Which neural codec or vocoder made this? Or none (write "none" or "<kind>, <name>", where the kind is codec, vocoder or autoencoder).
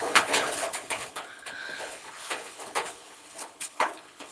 codec, HILCodec